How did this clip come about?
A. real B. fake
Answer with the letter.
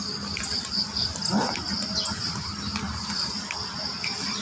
A